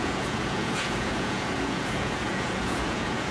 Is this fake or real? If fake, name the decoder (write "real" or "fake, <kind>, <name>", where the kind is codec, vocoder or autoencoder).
fake, vocoder, Vocos